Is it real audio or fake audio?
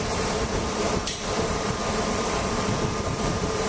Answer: fake